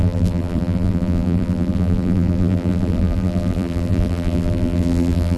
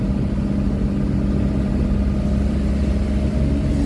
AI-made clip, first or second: first